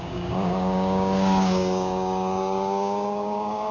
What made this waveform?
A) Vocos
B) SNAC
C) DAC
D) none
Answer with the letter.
C